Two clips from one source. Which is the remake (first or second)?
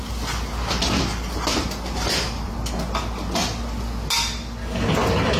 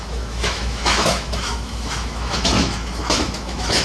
second